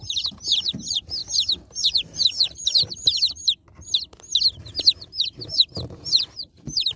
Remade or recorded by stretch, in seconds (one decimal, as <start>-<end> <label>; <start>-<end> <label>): 0.0-3.4 remade; 3.4-4.8 recorded; 4.8-7.0 remade